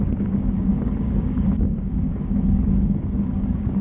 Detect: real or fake fake